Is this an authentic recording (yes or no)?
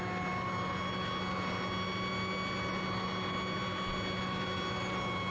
yes